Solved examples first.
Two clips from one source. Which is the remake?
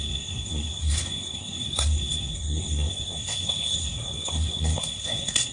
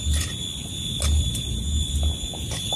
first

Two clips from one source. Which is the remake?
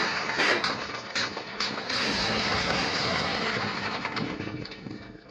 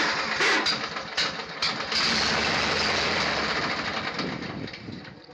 first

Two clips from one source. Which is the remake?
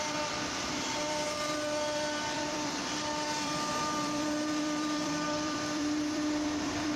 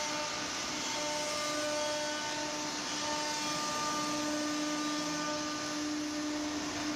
first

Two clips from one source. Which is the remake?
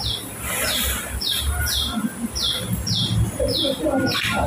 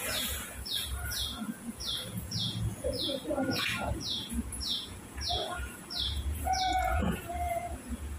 second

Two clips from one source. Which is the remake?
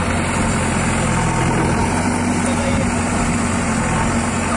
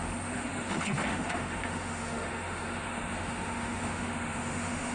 second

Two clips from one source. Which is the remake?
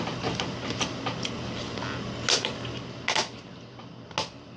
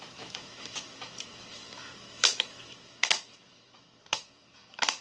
second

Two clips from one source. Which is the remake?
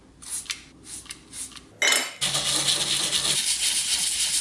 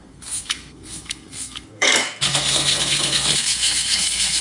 second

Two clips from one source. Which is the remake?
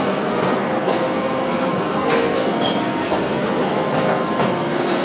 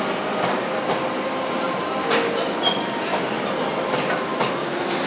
first